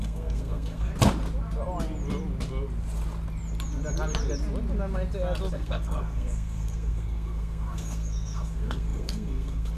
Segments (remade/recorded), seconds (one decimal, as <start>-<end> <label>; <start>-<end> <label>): 0.0-0.9 remade; 0.9-5.5 recorded; 5.5-9.8 remade

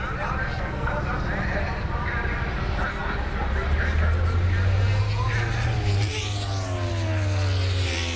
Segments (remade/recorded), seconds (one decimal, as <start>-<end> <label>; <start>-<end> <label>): 0.0-0.4 recorded; 0.4-0.9 remade; 0.9-8.2 recorded

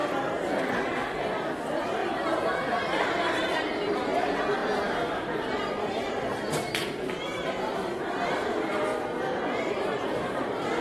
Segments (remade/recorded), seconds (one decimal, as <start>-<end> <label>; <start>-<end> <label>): 0.0-8.9 remade; 8.9-9.7 recorded; 9.7-10.8 remade

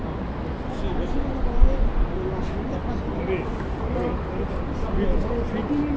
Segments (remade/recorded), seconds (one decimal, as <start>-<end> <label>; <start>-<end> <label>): 0.0-6.0 recorded

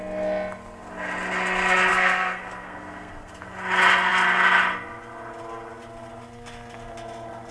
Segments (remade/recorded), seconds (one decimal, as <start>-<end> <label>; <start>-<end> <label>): 0.0-1.9 recorded; 1.9-3.3 remade; 3.3-7.5 recorded

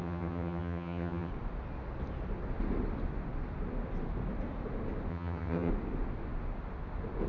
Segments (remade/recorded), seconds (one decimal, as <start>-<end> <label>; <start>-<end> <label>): 0.0-1.3 remade; 1.3-5.1 recorded; 5.1-5.7 remade; 5.7-7.3 recorded

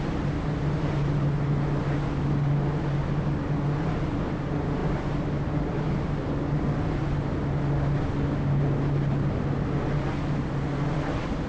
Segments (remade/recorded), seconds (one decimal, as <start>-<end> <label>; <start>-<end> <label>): 0.0-11.5 recorded